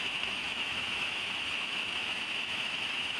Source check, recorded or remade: remade